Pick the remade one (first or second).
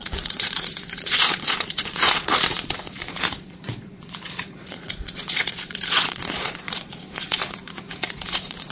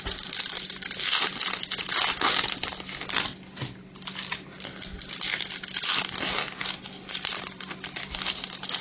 first